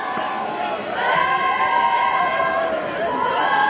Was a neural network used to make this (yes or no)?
no